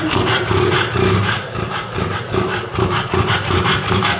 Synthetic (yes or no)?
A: yes